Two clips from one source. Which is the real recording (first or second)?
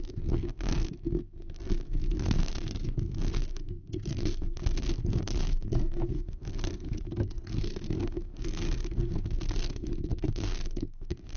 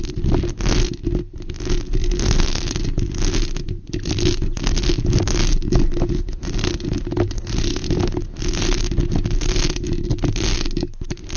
second